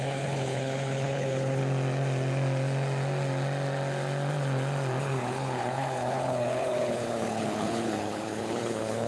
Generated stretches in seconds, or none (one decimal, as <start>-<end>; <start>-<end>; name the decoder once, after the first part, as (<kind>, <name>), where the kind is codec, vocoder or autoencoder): 0.0-1.6 (codec, HILCodec); 5.0-9.1